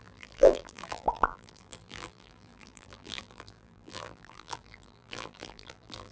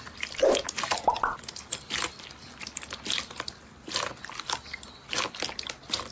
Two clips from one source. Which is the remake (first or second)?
first